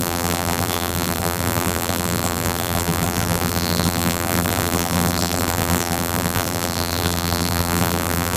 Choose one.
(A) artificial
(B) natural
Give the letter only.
A